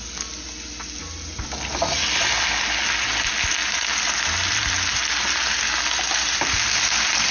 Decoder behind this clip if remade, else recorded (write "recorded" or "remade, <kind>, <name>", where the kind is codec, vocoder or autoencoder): recorded